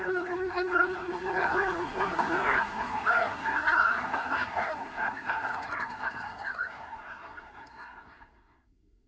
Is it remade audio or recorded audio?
remade